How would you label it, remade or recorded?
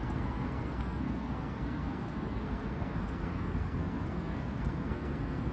remade